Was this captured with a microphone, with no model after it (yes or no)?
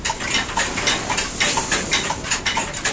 yes